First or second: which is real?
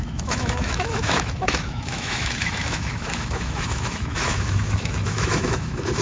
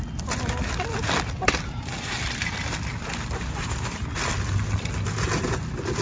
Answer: second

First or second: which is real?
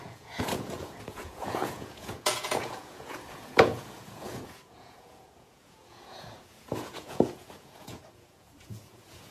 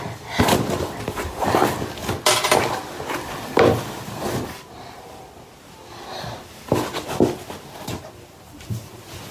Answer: second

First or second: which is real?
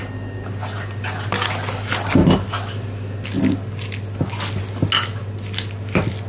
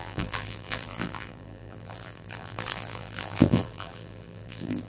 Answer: first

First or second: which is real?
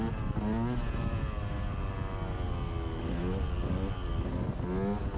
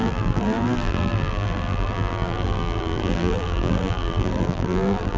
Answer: first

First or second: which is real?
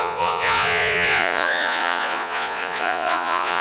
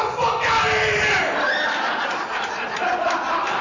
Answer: second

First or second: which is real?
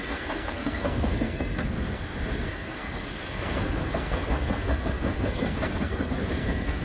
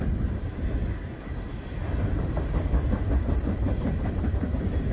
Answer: second